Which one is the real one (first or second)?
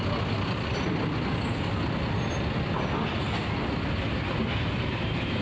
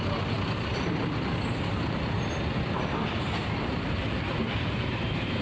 first